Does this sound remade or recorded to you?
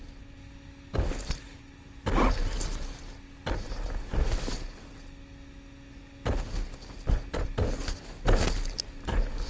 recorded